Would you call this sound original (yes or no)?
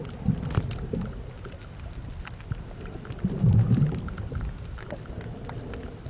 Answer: yes